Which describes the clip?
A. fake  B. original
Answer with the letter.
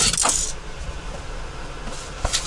B